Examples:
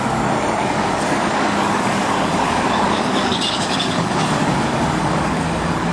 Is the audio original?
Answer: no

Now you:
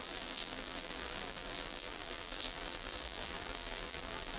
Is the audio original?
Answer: no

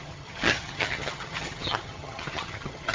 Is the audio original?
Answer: no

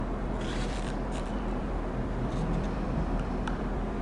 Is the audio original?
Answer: no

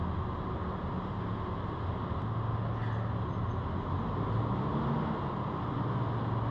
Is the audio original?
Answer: yes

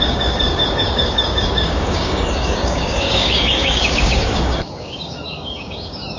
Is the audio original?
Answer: no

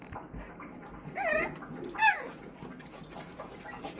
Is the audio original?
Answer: yes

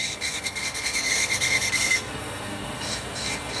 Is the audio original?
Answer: no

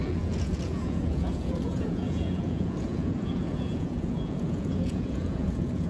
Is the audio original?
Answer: no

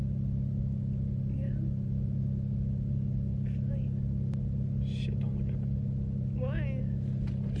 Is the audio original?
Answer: yes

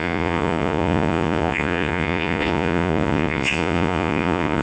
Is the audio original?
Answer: no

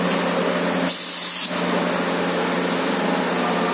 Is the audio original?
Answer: yes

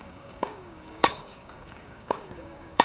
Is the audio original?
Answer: no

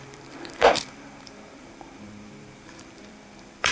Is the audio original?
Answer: no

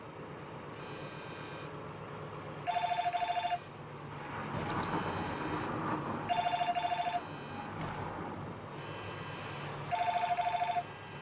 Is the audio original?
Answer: yes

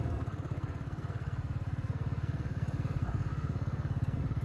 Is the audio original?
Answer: no